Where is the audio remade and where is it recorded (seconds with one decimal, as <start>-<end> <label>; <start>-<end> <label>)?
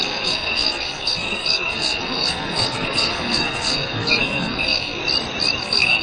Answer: 0.0-5.0 remade; 5.0-5.6 recorded; 5.6-6.0 remade